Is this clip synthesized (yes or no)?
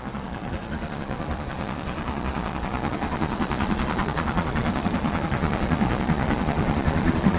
yes